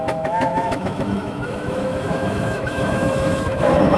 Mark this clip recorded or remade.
remade